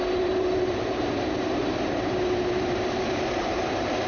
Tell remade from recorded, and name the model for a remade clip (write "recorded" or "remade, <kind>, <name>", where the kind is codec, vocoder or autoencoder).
remade, vocoder, BigVGAN v2